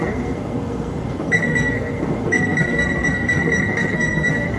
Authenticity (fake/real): fake